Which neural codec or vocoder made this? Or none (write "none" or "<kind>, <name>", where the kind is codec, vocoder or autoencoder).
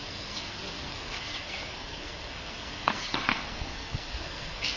codec, SNAC